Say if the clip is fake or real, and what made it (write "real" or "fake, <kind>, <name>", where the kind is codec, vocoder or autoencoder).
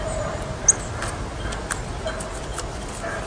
real